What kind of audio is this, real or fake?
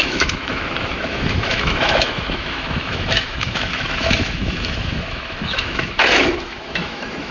fake